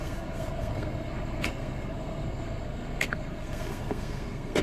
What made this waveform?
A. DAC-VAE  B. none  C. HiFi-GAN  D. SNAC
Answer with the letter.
D